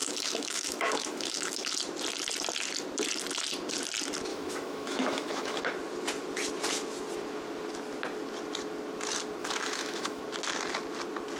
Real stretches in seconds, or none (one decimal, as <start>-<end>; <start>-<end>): 1.7-4.3; 5.6-9.4; 10.2-11.4